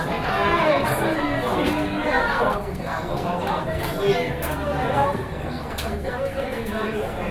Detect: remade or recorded remade